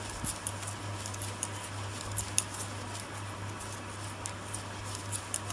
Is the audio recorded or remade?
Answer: recorded